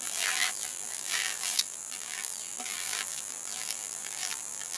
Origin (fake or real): fake